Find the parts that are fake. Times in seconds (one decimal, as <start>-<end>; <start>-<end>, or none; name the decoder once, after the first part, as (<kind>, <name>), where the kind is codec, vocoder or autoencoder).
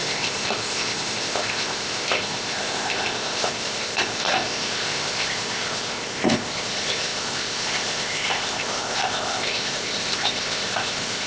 0.0-11.3 (codec, ZipCodec)